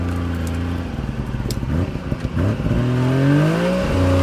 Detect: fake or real real